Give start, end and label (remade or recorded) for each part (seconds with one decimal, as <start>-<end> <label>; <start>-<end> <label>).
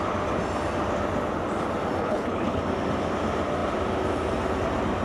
0.0-2.0 recorded; 2.0-2.6 remade; 2.6-5.0 recorded